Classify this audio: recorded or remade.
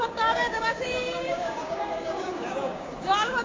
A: remade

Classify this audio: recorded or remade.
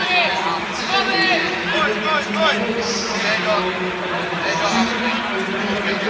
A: recorded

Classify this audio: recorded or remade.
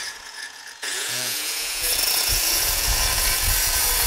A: remade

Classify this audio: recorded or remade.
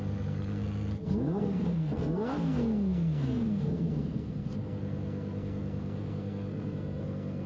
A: remade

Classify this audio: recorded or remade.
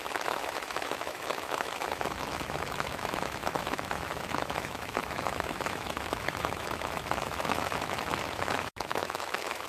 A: remade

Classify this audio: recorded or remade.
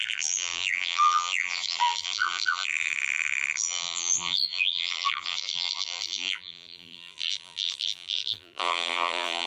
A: remade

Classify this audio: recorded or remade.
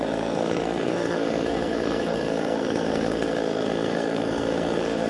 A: remade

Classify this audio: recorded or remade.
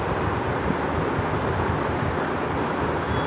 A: recorded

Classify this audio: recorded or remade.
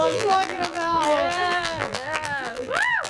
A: remade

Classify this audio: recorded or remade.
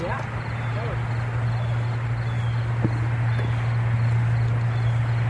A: recorded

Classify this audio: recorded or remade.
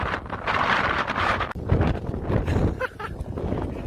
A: recorded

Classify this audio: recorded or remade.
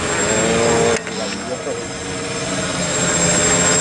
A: recorded